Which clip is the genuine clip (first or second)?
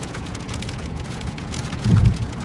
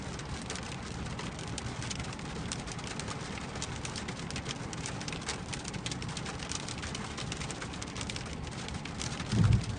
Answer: second